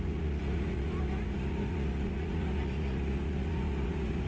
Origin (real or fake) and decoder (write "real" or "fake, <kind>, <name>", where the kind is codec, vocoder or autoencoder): fake, vocoder, Vocos